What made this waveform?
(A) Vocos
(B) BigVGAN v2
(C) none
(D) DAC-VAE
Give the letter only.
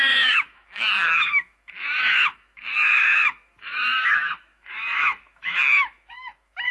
D